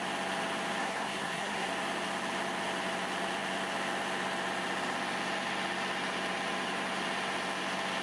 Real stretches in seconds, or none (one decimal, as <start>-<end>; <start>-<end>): 0.0-0.8; 1.7-8.0